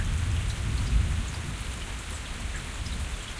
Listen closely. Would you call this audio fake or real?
real